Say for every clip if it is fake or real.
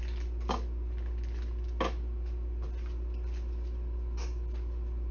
real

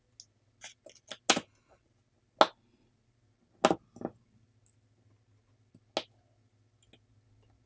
real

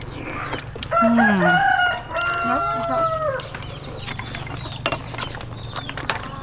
real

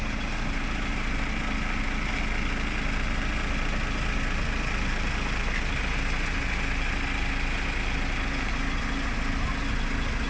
real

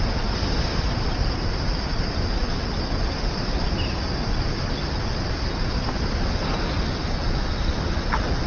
real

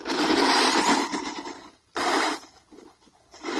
fake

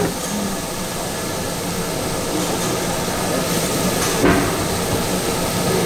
real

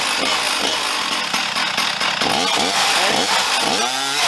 real